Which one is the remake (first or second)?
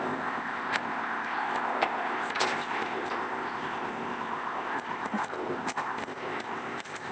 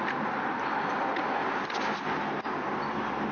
first